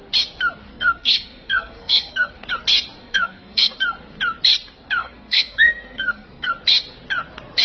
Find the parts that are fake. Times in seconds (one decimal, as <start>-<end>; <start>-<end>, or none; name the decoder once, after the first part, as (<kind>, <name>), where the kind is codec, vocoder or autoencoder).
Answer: 0.7-2.3 (codec, SNAC); 3.0-3.7; 5.0-6.5